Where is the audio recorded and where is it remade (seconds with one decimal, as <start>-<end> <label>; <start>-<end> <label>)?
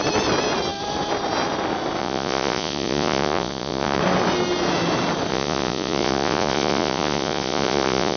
0.0-2.0 recorded; 2.0-4.0 remade; 4.0-5.3 recorded; 5.3-8.2 remade